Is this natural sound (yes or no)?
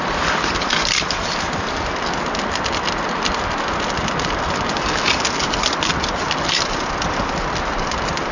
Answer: yes